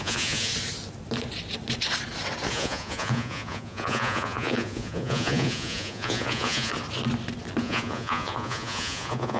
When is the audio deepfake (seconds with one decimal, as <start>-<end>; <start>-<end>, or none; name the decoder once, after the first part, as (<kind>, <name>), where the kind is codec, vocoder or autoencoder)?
0.0-0.5 (vocoder, Vocos); 2.5-6.7; 7.6-9.4